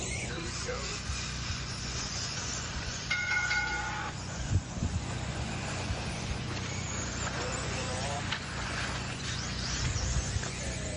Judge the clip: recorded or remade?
remade